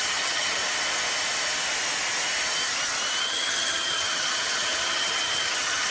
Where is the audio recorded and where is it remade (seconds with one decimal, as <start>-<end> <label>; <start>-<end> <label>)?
0.0-0.6 remade; 0.6-3.2 recorded; 3.2-5.9 remade

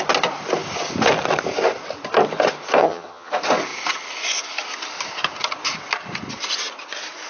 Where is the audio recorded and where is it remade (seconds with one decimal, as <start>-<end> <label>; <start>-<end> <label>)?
0.0-2.8 recorded; 2.8-3.3 remade; 3.3-7.3 recorded

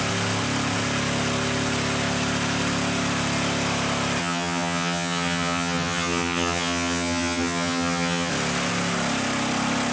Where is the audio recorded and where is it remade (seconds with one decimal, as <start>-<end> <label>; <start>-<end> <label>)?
0.0-4.2 recorded; 4.2-8.3 remade; 8.3-9.9 recorded

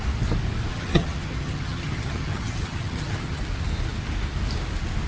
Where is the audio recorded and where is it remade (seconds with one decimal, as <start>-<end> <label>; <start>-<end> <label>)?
0.0-0.7 recorded; 0.7-3.4 remade; 3.4-5.1 recorded

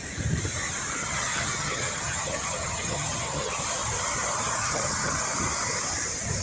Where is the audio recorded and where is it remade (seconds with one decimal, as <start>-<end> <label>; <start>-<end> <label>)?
0.0-1.0 recorded; 1.0-3.6 remade; 3.6-4.6 recorded; 4.6-5.2 remade; 5.2-6.4 recorded

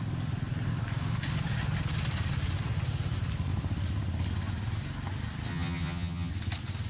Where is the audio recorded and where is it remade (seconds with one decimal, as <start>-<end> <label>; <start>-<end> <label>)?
0.0-5.5 recorded; 5.5-6.3 remade; 6.3-6.9 recorded